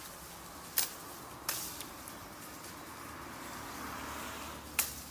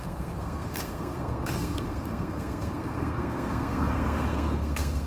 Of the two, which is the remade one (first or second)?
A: second